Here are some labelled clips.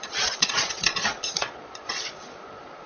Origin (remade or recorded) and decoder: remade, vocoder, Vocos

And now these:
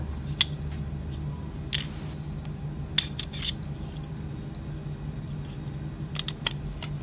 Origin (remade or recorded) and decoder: recorded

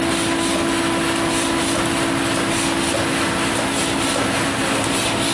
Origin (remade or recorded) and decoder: recorded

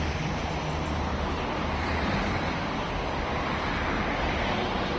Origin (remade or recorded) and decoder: recorded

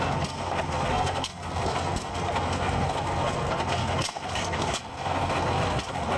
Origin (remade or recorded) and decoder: remade, codec, SNAC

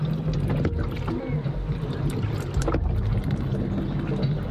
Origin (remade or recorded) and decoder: recorded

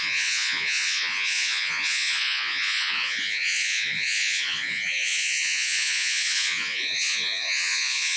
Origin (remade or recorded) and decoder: remade, vocoder, Vocos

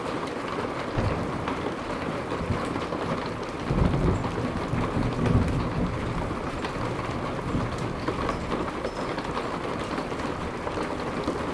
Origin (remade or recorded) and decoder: recorded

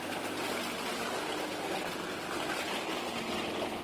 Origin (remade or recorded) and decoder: recorded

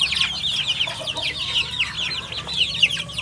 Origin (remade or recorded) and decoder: recorded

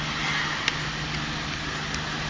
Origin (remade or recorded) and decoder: recorded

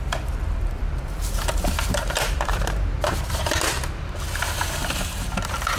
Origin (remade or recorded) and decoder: remade, vocoder, BigVGAN v2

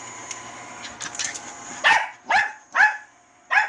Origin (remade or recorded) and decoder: remade, vocoder, BigVGAN v2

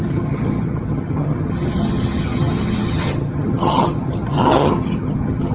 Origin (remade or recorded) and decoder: remade, vocoder, HiFi-GAN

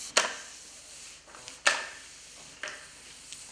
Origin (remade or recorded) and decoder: recorded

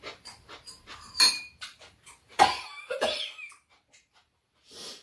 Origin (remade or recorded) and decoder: remade, vocoder, BigVGAN v2